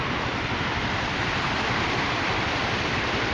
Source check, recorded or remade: remade